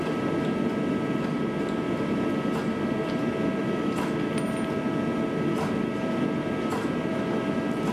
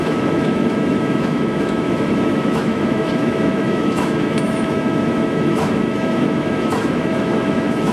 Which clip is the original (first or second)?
first